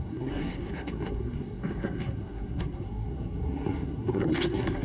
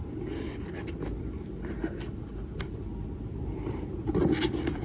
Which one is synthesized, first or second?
first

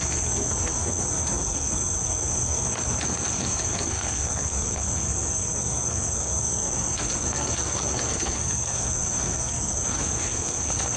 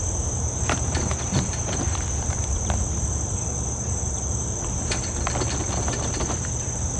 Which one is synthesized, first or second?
first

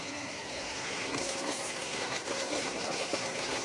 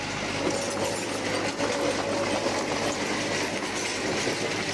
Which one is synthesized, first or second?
first